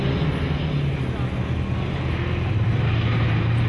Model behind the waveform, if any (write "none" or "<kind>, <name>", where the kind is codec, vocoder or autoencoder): none